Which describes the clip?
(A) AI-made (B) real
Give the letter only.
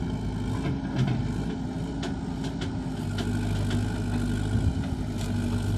B